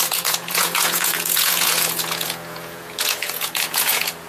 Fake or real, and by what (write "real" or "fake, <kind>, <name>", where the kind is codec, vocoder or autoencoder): fake, vocoder, Vocos